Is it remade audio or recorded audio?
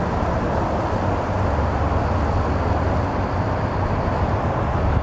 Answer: recorded